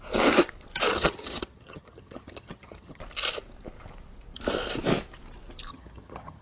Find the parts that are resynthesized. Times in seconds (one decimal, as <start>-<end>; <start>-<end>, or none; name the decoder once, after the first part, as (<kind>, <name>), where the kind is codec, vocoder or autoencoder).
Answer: 0.9-3.0 (vocoder, HiFi-GAN); 5.7-6.4